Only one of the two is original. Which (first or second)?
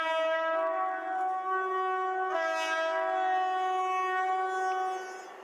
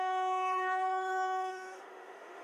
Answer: first